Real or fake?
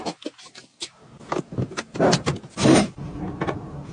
real